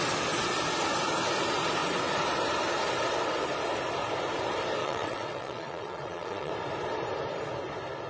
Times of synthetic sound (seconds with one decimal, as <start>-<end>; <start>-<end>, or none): 4.8-6.5